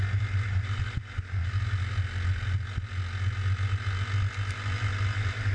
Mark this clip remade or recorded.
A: recorded